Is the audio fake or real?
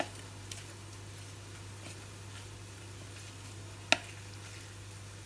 real